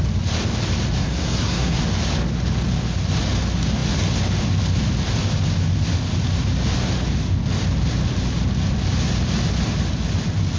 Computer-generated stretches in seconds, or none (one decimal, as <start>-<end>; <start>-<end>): 1.0-1.8